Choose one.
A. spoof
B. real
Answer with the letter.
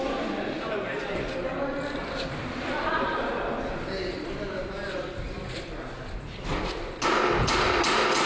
B